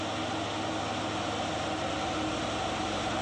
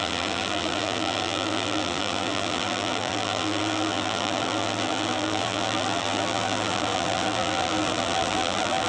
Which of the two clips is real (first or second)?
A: first